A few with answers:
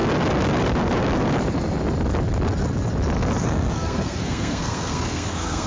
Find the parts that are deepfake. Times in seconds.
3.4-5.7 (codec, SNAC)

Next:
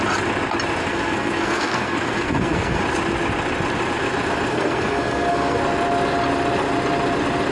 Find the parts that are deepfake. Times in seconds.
0.8-2.8 (codec, SNAC); 4.5-5.6

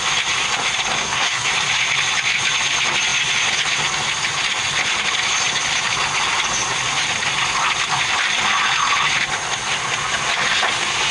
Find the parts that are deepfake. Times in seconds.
1.0-1.5 (codec, SNAC)